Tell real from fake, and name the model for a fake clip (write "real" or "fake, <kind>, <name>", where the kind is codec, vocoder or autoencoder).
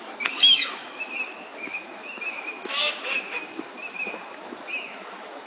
fake, autoencoder, DAC-VAE